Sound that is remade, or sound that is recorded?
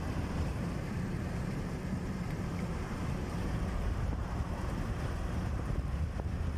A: remade